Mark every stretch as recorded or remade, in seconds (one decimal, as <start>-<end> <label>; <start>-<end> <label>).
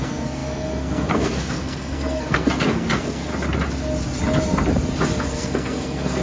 0.0-3.3 remade; 3.3-5.2 recorded; 5.2-6.2 remade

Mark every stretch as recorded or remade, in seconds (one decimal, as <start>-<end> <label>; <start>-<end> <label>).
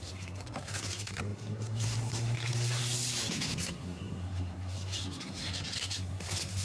0.0-2.8 remade; 2.8-3.3 recorded; 3.3-6.6 remade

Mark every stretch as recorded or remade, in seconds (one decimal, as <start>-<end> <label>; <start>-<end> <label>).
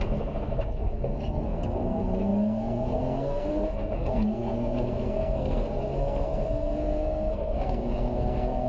0.0-8.7 remade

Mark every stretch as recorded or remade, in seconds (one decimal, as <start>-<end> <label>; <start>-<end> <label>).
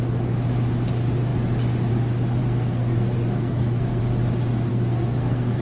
0.0-2.4 recorded; 2.4-4.0 remade; 4.0-4.7 recorded; 4.7-5.6 remade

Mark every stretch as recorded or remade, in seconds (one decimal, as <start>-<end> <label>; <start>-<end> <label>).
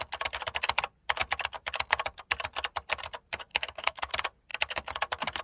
0.0-3.5 recorded; 3.5-4.1 remade; 4.1-5.4 recorded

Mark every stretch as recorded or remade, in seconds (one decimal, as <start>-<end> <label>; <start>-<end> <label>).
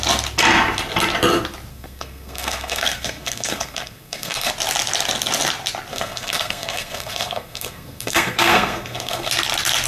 0.0-1.7 recorded; 1.7-4.5 remade; 4.5-5.9 recorded; 5.9-9.3 remade; 9.3-9.9 recorded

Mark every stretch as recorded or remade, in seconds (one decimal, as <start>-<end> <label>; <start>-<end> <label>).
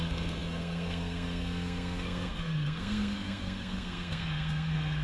0.0-5.0 remade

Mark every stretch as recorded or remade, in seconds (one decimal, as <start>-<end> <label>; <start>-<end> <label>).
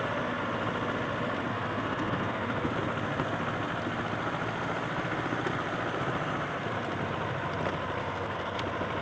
0.0-1.5 recorded; 1.5-2.7 remade; 2.7-8.0 recorded; 8.0-8.6 remade; 8.6-9.0 recorded